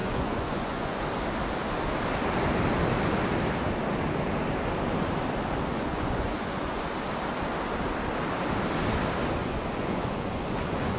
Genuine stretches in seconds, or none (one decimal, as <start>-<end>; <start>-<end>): 1.0-5.7; 6.8-9.4